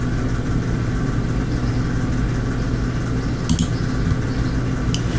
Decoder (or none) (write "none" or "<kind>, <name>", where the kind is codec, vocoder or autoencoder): none